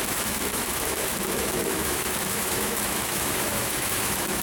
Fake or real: fake